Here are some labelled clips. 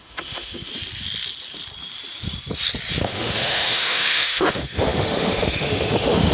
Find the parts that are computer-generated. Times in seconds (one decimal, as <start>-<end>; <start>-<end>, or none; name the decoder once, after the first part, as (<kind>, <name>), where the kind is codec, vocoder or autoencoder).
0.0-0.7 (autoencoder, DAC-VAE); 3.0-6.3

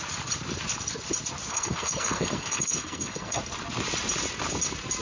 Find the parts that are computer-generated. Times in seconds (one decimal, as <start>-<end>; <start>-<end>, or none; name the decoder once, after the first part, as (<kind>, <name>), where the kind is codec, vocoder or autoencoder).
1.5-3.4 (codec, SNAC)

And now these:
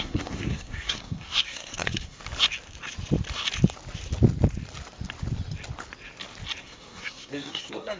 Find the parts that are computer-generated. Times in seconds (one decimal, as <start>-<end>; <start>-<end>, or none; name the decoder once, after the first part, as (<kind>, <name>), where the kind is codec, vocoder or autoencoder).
0.0-2.2 (codec, SNAC); 6.6-8.0

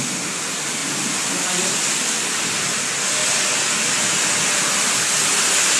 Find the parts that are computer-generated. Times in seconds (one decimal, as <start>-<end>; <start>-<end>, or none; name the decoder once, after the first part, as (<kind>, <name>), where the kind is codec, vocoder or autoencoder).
none

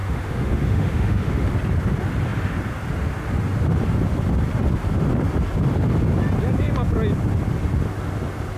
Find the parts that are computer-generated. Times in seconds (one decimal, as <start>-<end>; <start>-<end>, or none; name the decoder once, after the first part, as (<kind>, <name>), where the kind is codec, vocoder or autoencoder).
0.0-1.5 (autoencoder, DAC-VAE)

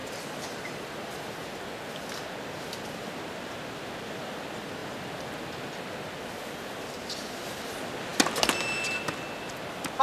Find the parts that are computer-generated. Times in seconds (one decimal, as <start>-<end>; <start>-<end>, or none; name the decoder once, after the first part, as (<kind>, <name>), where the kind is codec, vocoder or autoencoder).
0.0-1.3 (vocoder, BigVGAN v2)

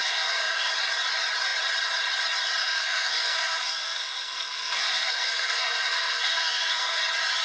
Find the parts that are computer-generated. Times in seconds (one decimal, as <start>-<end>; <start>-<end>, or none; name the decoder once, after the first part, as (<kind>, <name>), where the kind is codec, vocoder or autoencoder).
0.0-0.7 (codec, SNAC); 2.6-7.0

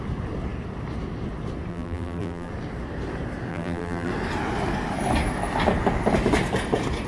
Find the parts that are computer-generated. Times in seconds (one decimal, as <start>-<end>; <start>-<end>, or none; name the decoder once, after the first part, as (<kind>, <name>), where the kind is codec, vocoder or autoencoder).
1.7-2.5 (vocoder, BigVGAN v2); 3.5-4.1